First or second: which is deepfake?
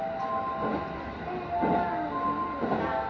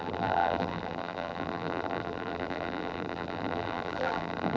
second